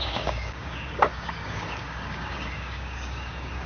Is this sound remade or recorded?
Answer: remade